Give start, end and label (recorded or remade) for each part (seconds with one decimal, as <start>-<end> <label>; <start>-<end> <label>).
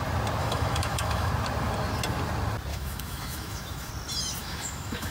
0.0-0.4 recorded; 0.4-1.3 remade; 1.3-2.7 recorded; 2.7-3.9 remade; 3.9-4.4 recorded; 4.4-5.1 remade